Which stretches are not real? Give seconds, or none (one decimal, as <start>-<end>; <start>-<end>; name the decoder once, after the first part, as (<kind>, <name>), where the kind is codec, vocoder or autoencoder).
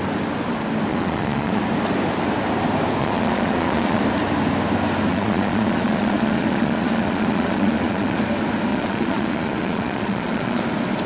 0.9-1.6 (vocoder, Vocos); 3.0-4.0; 5.1-8.2; 8.7-10.6